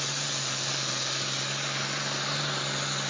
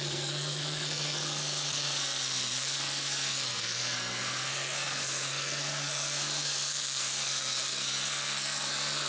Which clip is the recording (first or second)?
first